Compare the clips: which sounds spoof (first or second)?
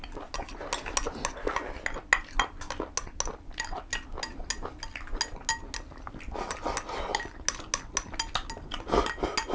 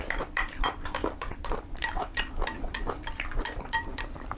second